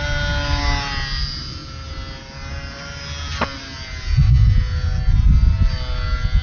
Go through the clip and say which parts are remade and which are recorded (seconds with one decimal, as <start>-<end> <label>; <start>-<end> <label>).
0.0-6.4 recorded